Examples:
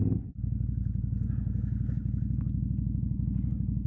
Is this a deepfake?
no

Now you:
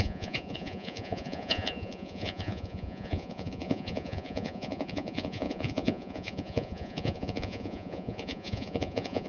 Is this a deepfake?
yes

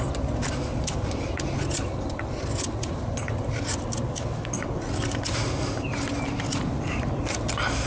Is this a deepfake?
no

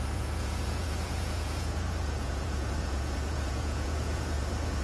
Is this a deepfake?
yes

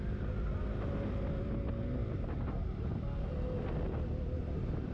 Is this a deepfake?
no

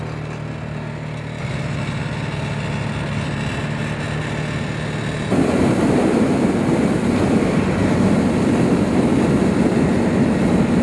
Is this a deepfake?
no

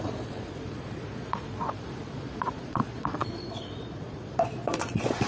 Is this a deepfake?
yes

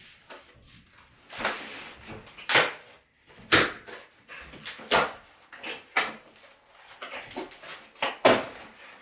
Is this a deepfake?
no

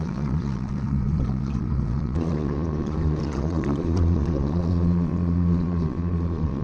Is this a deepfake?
yes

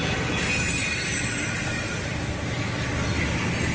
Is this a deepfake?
no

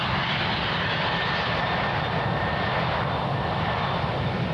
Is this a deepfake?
no